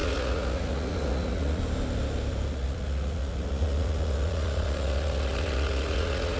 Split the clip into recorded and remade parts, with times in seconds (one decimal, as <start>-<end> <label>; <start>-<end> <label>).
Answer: 0.0-1.6 remade; 1.6-2.5 recorded; 2.5-6.4 remade